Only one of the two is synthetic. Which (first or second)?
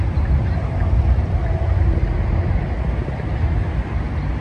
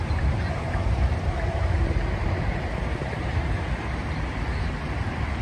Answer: second